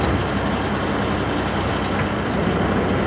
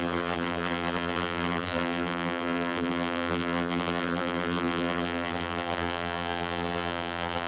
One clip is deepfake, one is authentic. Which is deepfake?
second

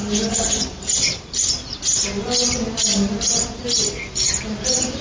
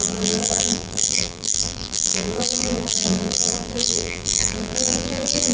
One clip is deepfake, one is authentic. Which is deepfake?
second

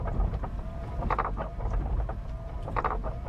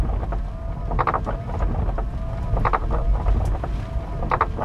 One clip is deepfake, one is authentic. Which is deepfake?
first